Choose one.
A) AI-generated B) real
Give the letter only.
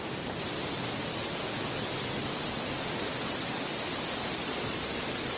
B